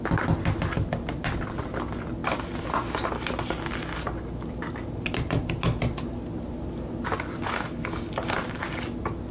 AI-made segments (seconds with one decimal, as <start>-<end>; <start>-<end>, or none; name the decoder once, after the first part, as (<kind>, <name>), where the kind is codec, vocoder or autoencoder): none

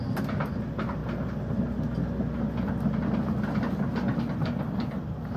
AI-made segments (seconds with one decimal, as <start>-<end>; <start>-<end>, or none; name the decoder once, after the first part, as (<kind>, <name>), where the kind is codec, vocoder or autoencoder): none

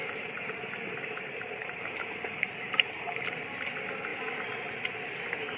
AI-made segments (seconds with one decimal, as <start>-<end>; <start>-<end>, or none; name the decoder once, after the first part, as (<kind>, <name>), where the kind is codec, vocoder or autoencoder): 0.0-3.4 (vocoder, BigVGAN v2)

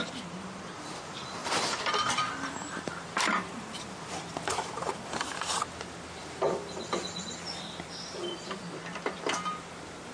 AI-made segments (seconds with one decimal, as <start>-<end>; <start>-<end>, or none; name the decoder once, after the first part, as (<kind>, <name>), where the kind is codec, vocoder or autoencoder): 1.4-5.6 (vocoder, BigVGAN v2); 6.2-8.6

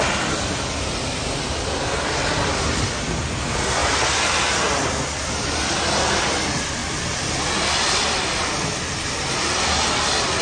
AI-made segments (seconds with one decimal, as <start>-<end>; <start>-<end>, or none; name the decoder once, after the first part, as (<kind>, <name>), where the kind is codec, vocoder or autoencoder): 6.8-9.5 (vocoder, BigVGAN v2)

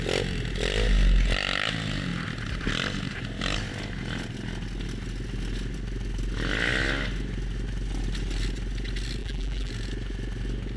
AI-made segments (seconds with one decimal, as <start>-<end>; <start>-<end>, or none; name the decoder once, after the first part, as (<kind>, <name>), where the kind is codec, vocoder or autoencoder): 9.2-9.7 (vocoder, BigVGAN v2)

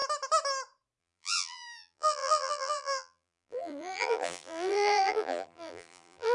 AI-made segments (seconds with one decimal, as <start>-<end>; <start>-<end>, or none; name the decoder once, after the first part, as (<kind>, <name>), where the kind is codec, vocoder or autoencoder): 1.0-6.3 (vocoder, BigVGAN v2)

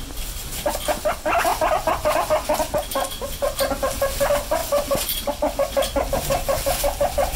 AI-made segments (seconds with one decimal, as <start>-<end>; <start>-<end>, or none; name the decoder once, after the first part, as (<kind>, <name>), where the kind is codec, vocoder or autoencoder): 4.6-5.3 (vocoder, BigVGAN v2)